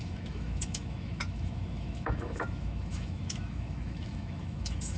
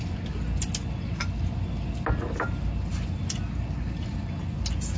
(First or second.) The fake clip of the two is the first